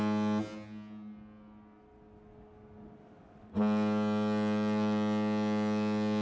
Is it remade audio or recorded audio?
recorded